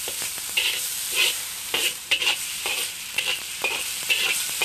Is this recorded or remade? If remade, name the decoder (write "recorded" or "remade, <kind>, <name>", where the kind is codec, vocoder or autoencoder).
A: remade, vocoder, BigVGAN v2